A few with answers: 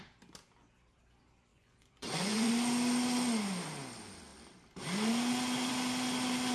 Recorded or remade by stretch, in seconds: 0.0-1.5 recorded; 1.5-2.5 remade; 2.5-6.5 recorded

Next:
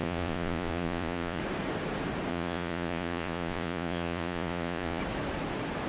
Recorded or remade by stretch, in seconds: 0.0-1.4 remade; 1.4-2.3 recorded; 2.3-5.0 remade; 5.0-5.9 recorded

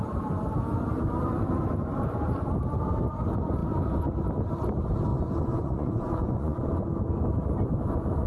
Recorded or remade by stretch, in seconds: 0.0-5.1 recorded; 5.1-6.7 remade; 6.7-8.3 recorded

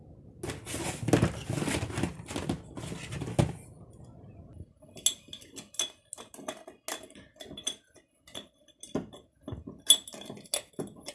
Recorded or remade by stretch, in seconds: 0.0-11.1 recorded

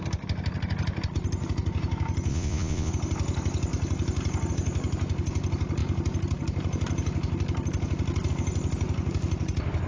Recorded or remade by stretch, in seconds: 0.0-2.3 recorded; 2.3-2.9 remade; 2.9-9.9 recorded

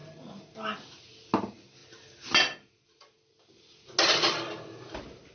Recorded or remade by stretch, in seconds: 0.0-5.3 recorded